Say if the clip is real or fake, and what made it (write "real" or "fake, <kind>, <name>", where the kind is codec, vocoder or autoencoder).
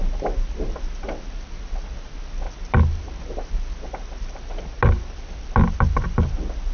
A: real